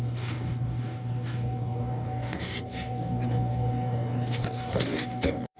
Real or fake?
fake